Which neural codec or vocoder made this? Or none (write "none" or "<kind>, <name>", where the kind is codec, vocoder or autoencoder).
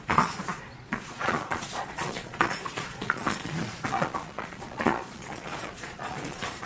vocoder, Vocos